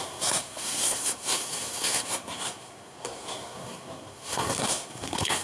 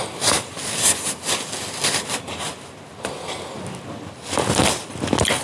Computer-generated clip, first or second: first